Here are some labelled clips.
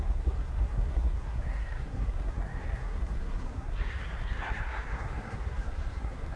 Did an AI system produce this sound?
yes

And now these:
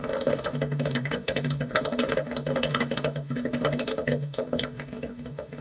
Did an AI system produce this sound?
yes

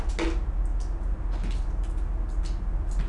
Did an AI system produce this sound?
no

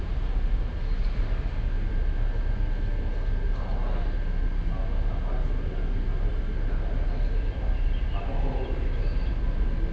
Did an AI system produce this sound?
no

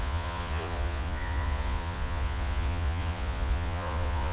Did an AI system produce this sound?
yes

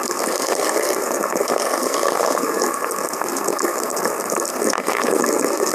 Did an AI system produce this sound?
yes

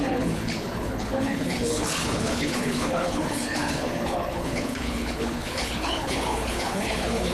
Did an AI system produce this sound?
yes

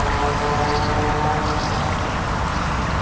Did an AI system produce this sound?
no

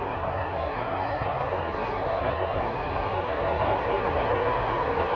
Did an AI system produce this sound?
yes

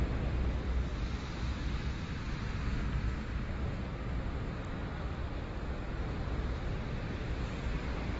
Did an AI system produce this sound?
no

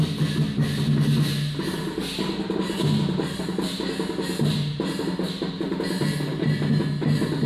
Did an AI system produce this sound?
no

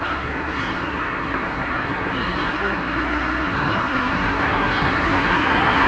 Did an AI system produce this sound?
yes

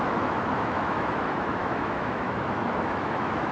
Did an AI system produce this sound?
yes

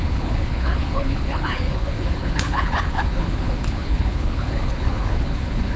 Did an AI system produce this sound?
yes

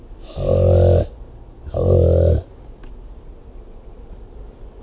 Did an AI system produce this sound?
no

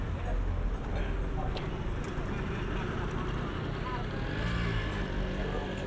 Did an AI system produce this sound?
no